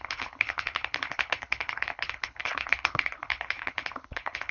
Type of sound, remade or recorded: remade